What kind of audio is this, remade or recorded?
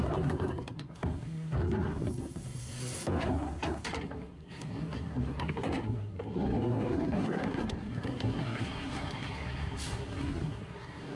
remade